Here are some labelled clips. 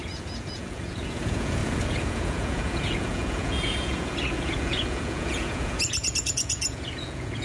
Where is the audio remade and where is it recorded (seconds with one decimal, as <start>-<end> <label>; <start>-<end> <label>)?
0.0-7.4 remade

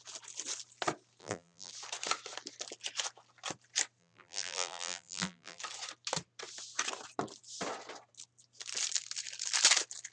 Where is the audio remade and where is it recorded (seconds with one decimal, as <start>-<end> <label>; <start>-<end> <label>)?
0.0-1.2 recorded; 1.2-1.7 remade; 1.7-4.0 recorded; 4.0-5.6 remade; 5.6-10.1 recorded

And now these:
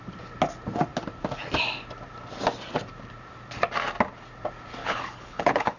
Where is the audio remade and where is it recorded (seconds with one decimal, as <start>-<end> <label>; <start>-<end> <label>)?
0.0-4.8 recorded; 4.8-5.8 remade

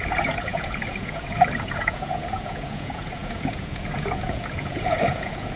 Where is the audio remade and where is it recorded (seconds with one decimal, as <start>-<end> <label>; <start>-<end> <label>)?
0.0-5.6 remade